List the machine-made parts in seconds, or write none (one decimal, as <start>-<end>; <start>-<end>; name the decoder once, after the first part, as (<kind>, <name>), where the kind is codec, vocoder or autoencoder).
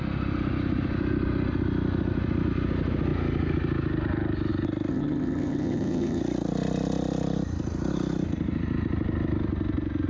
4.9-6.2 (vocoder, HiFi-GAN)